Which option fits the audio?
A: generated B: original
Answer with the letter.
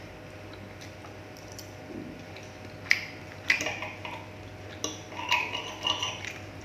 B